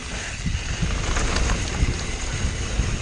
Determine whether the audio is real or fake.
real